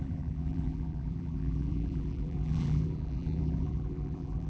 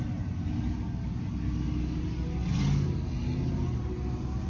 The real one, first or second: second